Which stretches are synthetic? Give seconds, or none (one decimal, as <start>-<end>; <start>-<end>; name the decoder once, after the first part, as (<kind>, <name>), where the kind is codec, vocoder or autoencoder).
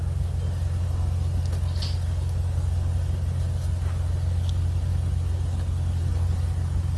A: none